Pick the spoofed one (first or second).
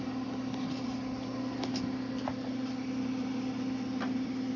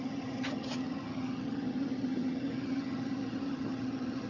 second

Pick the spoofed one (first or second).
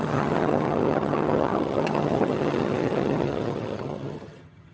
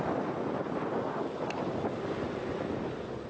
first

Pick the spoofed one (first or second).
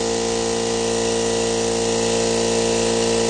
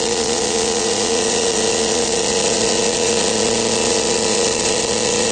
second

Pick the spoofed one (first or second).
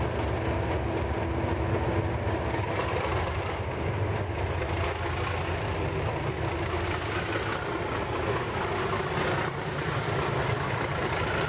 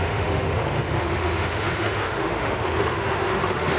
second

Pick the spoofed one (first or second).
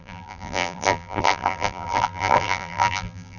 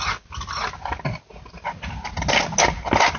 first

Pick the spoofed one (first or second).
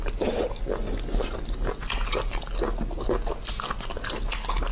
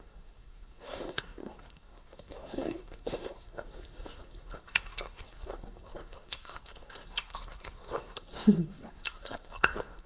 second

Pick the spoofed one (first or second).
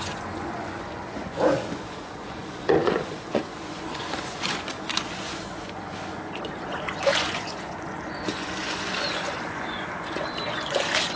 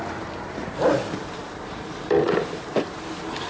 first